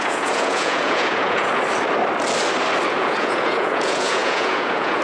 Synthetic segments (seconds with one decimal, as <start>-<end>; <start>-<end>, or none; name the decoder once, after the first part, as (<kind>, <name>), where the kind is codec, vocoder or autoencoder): 0.0-1.5 (vocoder, Vocos); 2.9-5.0

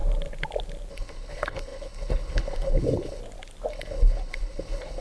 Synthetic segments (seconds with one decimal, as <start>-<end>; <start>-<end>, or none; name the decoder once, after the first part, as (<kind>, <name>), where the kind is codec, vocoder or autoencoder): 0.9-3.2 (codec, HILCodec); 3.7-5.0

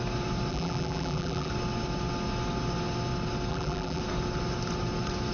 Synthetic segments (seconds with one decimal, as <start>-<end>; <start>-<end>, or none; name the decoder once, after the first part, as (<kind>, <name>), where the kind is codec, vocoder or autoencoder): 0.5-1.5 (vocoder, BigVGAN v2); 3.5-4.0

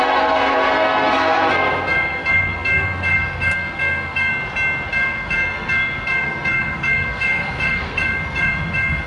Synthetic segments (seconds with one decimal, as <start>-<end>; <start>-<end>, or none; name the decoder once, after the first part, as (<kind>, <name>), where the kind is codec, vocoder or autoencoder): 0.0-4.3 (codec, SNAC); 4.9-9.1

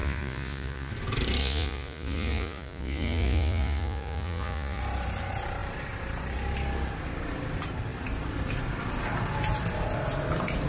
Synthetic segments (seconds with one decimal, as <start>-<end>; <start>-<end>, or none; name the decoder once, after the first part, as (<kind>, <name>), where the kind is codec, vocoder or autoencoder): 0.0-0.9 (vocoder, Vocos); 1.4-4.8

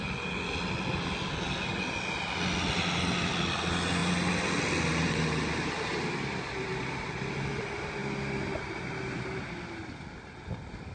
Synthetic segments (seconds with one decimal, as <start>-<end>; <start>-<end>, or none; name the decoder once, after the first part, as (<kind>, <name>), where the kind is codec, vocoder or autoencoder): none